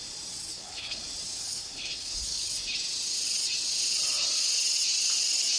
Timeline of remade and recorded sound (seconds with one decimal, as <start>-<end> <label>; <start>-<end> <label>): 0.0-0.5 recorded; 0.5-1.0 remade; 1.0-1.4 recorded; 1.4-2.5 remade; 2.5-5.6 recorded